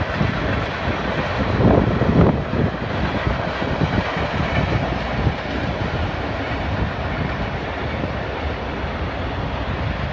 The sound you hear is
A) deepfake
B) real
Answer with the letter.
B